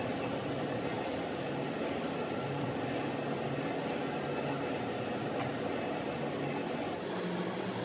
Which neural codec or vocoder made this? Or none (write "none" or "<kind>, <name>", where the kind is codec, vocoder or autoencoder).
none